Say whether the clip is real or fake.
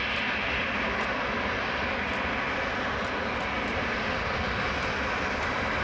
real